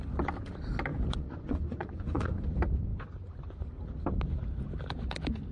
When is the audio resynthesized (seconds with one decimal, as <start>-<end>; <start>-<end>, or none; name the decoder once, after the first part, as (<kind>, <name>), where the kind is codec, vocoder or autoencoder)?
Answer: 0.9-2.4 (vocoder, Vocos)